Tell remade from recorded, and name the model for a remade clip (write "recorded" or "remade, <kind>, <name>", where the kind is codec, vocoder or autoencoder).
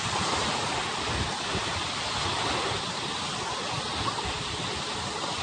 recorded